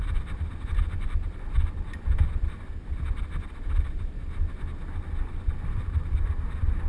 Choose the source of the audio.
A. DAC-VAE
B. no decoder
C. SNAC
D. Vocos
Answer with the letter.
B